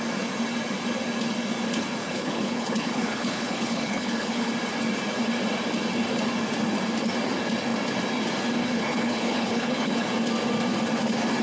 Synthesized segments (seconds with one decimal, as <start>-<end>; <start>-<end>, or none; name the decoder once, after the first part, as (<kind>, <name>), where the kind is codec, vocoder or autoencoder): 2.0-4.5 (codec, HILCodec); 8.6-10.1